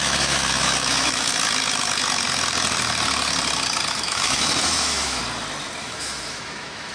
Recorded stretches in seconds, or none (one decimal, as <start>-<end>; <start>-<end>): 1.3-3.9; 5.2-5.8